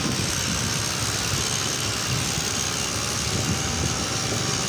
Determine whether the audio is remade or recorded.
recorded